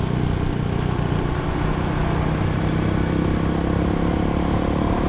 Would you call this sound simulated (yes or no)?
no